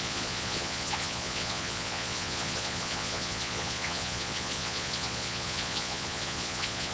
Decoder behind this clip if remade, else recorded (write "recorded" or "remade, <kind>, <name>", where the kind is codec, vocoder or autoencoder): remade, vocoder, Vocos